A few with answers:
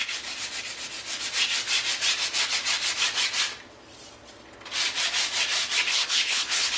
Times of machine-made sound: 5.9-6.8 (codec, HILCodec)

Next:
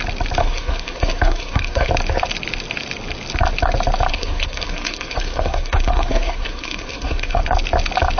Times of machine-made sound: 0.4-1.9 (codec, SNAC); 4.1-7.4

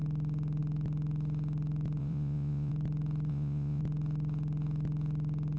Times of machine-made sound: 2.0-2.7 (vocoder, Vocos); 3.3-3.8

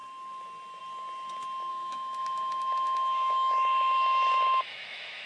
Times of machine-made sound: 1.7-5.3 (autoencoder, DAC-VAE)

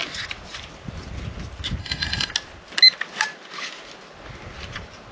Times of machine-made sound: 1.8-2.3 (codec, SNAC)

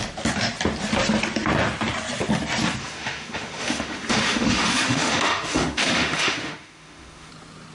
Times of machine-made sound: 2.8-7.3 (autoencoder, DAC-VAE)